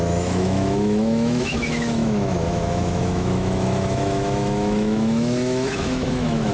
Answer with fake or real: fake